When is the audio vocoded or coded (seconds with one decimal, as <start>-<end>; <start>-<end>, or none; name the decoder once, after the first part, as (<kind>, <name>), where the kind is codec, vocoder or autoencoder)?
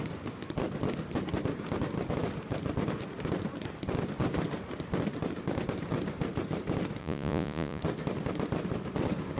7.0-7.8 (vocoder, Vocos)